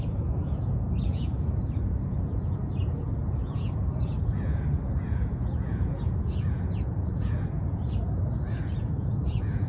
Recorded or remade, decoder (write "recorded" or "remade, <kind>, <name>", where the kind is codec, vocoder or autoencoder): remade, vocoder, Vocos